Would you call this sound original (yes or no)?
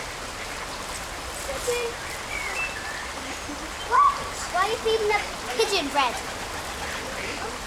yes